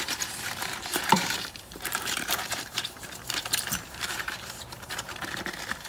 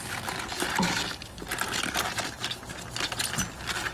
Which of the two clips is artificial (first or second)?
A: first